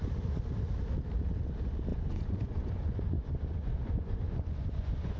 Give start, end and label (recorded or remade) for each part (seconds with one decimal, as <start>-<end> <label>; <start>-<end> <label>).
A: 0.0-1.9 recorded; 1.9-5.2 remade